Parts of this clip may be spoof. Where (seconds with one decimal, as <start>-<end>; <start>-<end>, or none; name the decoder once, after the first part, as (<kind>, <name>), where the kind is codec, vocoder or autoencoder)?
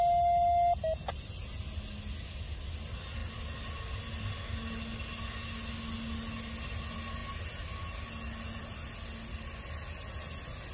none